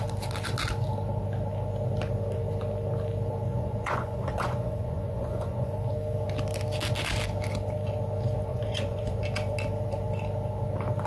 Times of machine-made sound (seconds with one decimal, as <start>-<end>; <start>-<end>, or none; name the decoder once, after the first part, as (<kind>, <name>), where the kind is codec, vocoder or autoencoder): 3.5-5.7 (vocoder, Vocos); 8.5-9.2